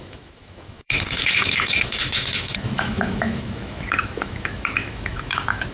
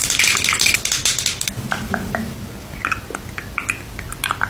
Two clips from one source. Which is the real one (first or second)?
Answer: second